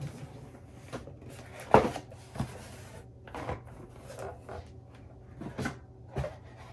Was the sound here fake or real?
real